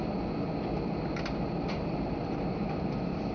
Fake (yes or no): no